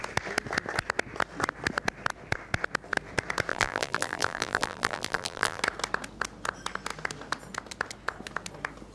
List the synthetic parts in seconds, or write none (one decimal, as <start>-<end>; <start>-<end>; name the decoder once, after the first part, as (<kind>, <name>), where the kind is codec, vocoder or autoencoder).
3.5-5.6 (vocoder, BigVGAN v2)